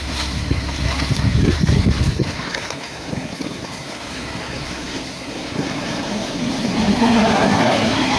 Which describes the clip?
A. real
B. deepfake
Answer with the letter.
B